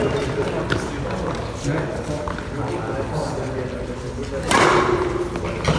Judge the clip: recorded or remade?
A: recorded